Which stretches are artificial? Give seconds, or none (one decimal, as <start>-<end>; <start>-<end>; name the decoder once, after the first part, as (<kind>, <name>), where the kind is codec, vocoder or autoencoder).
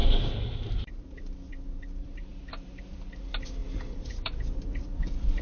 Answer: 0.0-5.4 (vocoder, BigVGAN v2)